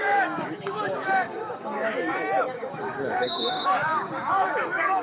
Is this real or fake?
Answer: fake